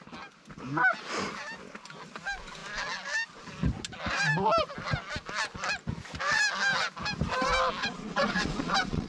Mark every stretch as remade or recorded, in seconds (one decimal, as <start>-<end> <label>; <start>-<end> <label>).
0.0-7.8 recorded; 7.8-9.1 remade

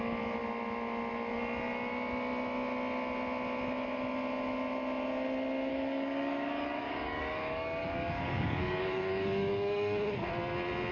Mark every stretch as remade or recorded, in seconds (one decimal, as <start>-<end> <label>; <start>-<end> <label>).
0.0-5.7 recorded; 5.7-10.2 remade; 10.2-10.9 recorded

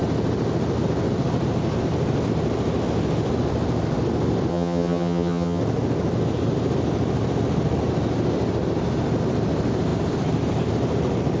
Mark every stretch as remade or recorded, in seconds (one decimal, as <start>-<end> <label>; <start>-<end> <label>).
0.0-4.5 recorded; 4.5-5.6 remade; 5.6-11.4 recorded

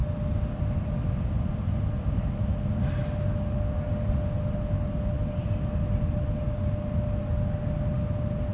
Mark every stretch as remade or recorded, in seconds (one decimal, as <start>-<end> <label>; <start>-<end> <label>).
0.0-8.5 recorded

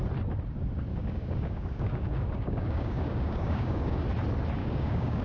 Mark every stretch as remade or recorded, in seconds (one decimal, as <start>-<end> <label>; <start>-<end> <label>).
0.0-0.9 recorded; 0.9-4.0 remade; 4.0-4.6 recorded; 4.6-5.2 remade

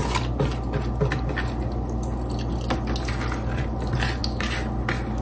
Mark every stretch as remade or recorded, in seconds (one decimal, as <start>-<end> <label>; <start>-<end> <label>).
0.0-5.2 recorded

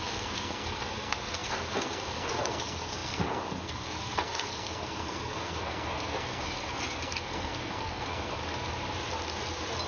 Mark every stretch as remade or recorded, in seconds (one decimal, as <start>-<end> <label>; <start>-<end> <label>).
0.0-8.4 remade; 8.4-9.9 recorded